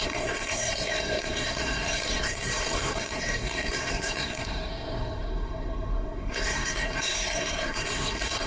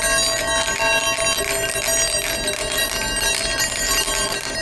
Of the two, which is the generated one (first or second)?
first